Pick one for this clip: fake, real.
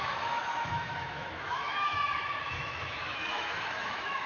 fake